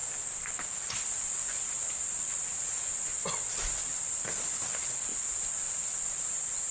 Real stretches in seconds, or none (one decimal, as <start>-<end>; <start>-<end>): 0.0-6.7